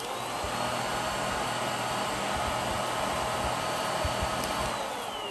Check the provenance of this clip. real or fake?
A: real